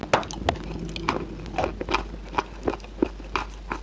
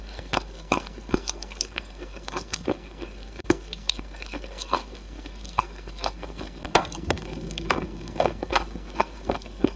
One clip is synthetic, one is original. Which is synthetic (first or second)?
second